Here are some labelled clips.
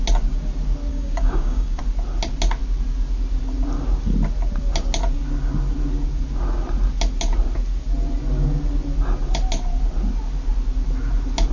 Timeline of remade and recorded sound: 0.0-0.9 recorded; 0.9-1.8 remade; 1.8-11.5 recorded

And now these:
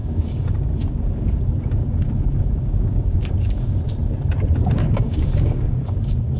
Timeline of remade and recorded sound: 0.0-3.8 remade; 3.8-4.8 recorded; 4.8-6.4 remade

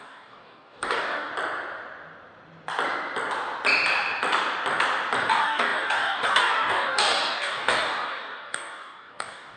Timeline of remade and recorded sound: 0.0-1.3 remade; 1.3-5.3 recorded; 5.3-9.6 remade

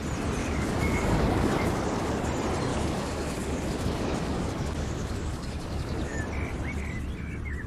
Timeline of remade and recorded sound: 0.0-0.4 recorded; 0.4-2.2 remade; 2.2-2.7 recorded; 2.7-6.2 remade; 6.2-7.7 recorded